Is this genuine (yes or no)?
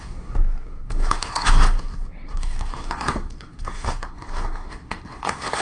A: no